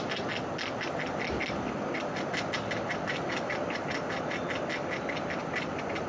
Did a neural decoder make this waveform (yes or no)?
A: no